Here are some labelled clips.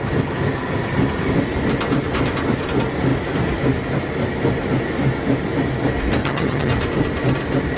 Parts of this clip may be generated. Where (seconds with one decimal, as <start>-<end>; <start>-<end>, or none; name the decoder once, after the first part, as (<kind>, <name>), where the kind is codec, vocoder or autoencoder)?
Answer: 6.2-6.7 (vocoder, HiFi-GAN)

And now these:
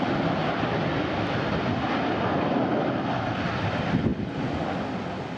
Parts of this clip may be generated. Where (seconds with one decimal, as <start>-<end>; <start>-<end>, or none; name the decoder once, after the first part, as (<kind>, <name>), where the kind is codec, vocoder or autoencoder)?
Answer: none

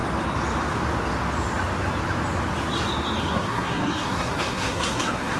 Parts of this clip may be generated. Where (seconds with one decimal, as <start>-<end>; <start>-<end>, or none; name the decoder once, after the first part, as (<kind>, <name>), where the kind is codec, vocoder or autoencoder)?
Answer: 3.2-5.4 (codec, SNAC)